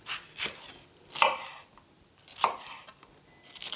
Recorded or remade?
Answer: recorded